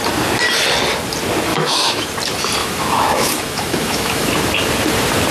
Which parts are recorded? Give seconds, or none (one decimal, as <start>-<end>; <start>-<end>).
0.0-1.5; 2.1-2.6; 4.3-5.3